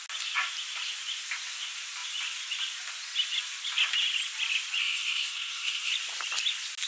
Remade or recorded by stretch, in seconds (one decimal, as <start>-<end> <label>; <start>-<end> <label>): 0.0-4.8 recorded; 4.8-5.9 remade; 5.9-6.9 recorded